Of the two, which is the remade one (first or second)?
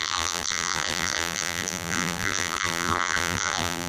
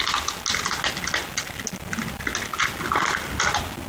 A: first